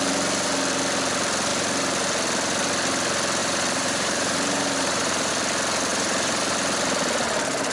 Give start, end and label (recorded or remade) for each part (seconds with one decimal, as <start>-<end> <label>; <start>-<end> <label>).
0.0-3.4 recorded; 3.4-5.3 remade; 5.3-5.9 recorded; 5.9-6.4 remade; 6.4-7.7 recorded